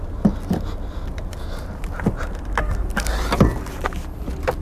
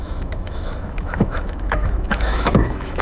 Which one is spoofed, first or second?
second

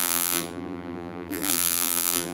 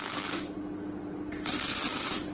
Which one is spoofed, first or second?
first